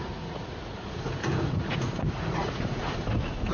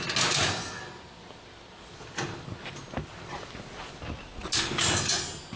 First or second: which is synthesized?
first